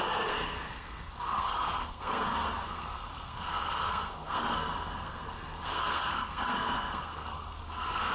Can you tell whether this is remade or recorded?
remade